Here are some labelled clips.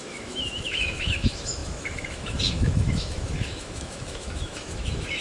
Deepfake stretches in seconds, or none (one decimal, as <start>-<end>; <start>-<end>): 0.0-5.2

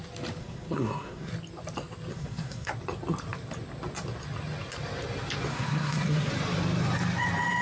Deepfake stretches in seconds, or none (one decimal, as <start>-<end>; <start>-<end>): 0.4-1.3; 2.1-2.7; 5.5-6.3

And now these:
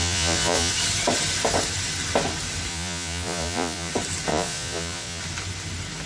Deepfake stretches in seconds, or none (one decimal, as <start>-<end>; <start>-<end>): 0.0-0.7; 2.7-3.9; 4.3-5.2

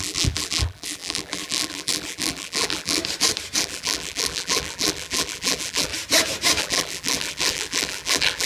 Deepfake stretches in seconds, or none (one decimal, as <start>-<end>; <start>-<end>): 0.0-3.0; 3.6-5.9; 6.6-8.5

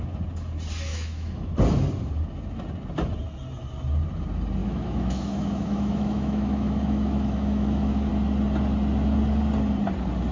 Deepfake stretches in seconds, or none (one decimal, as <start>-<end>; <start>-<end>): 0.9-1.5; 4.6-8.1

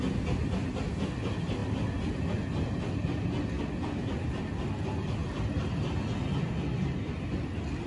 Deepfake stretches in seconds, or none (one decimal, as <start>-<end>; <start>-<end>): none

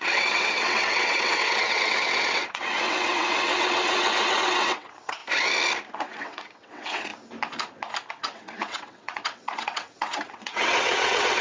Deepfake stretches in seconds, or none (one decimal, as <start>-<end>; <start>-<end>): 0.0-5.2; 5.9-7.1; 8.1-11.4

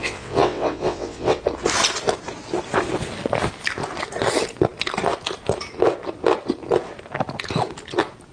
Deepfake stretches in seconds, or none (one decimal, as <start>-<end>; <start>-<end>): 0.0-1.4